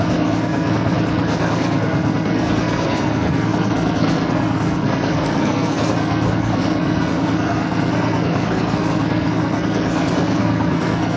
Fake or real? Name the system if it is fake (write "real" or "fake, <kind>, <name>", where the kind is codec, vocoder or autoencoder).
fake, codec, SNAC